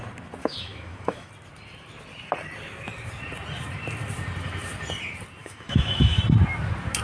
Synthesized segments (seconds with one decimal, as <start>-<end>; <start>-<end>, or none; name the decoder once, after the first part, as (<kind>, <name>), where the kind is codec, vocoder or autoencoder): 0.4-1.3 (autoencoder, DAC-VAE); 5.4-6.2